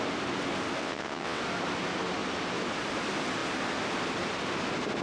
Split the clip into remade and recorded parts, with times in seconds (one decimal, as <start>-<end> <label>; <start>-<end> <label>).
0.0-0.8 recorded; 0.8-1.4 remade; 1.4-5.0 recorded